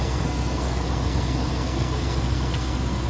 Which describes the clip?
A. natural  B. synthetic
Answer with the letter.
B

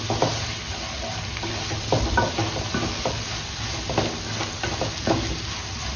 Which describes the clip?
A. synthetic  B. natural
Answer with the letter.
B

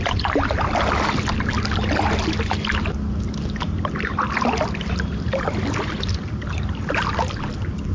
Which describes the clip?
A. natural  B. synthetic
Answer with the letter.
A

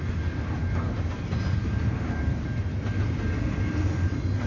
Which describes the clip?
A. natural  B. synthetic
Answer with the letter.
A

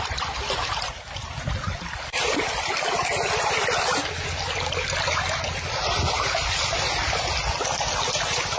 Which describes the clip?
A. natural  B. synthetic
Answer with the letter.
A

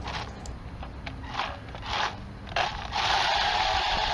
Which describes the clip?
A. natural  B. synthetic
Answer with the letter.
A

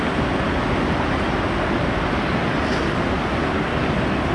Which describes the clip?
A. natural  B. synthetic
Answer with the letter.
A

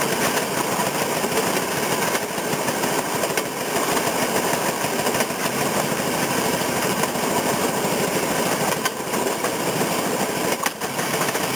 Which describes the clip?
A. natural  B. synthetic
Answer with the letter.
B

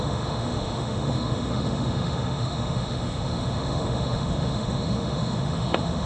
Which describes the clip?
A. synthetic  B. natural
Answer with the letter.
A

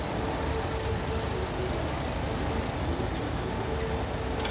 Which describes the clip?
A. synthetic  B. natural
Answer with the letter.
B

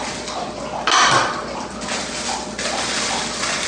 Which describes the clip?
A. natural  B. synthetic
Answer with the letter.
A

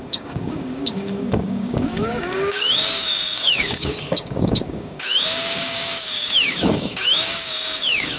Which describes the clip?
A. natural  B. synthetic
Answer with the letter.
B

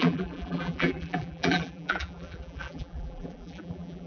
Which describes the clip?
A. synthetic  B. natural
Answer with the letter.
A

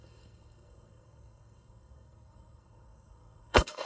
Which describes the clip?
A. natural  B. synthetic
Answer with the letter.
B